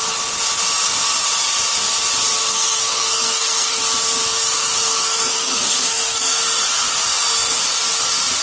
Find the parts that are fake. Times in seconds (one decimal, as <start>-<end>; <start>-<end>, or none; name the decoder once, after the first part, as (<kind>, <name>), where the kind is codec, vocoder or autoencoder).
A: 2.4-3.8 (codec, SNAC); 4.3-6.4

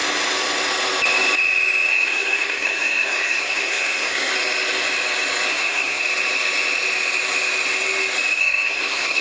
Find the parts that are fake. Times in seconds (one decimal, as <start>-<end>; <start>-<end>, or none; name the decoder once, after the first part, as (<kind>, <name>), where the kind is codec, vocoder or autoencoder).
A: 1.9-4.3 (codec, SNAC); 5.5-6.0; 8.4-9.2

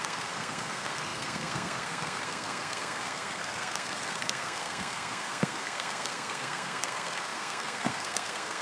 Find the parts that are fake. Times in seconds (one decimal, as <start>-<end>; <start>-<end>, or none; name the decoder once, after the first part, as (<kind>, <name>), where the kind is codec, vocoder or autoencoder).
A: 0.0-8.6 (codec, SNAC)